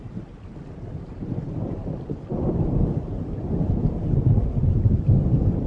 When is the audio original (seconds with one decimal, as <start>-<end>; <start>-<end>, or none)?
0.0-5.7